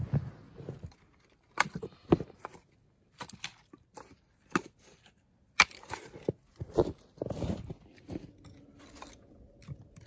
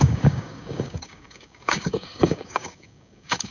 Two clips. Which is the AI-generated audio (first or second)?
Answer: second